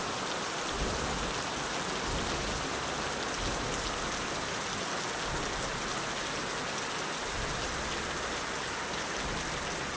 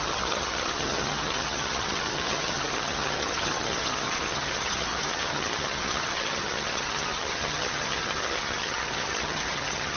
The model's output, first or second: second